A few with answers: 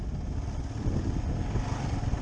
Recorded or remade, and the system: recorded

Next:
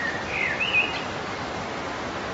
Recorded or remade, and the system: recorded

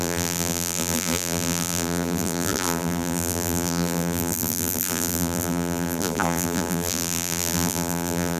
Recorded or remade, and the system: remade, vocoder, BigVGAN v2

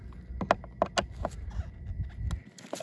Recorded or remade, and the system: recorded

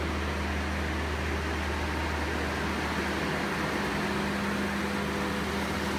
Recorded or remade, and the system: recorded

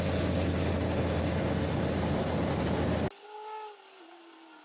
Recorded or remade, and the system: recorded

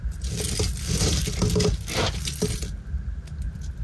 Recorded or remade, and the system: recorded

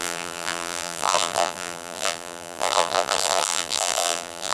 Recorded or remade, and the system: remade, vocoder, BigVGAN v2